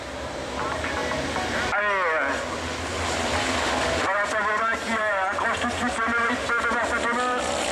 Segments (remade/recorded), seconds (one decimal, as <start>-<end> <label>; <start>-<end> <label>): 0.0-1.0 remade; 1.0-3.8 recorded; 3.8-7.7 remade